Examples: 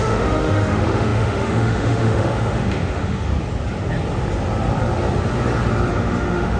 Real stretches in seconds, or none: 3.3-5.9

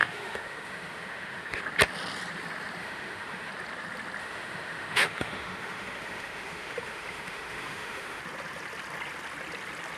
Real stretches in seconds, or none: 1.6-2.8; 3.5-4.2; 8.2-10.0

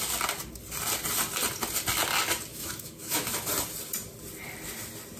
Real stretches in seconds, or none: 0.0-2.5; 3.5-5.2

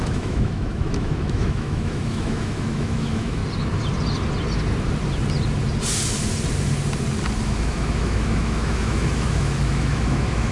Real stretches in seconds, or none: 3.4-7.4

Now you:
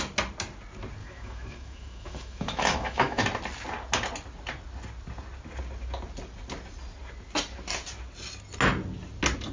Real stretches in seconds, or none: 0.0-1.0; 3.2-9.5